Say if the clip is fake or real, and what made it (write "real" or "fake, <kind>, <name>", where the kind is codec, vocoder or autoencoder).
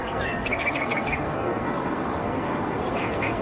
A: fake, codec, SNAC